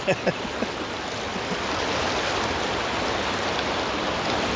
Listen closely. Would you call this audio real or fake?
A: real